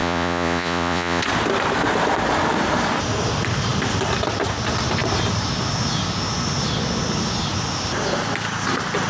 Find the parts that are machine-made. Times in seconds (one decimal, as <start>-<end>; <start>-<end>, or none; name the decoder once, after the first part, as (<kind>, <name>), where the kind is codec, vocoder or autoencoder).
0.0-1.2 (vocoder, Vocos)